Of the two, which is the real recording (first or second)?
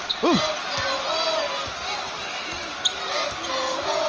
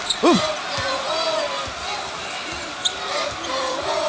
first